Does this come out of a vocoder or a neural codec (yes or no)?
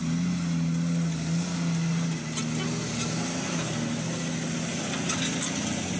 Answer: no